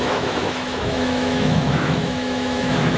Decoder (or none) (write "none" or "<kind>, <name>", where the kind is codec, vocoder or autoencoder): autoencoder, DAC-VAE